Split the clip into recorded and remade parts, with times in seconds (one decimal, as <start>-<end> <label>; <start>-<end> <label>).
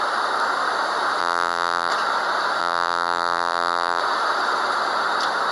0.0-1.2 recorded; 1.2-1.9 remade; 1.9-2.6 recorded; 2.6-4.0 remade; 4.0-5.5 recorded